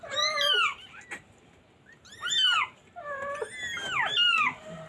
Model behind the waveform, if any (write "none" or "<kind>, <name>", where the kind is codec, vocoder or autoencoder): none